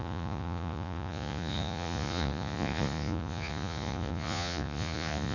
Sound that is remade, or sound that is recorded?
remade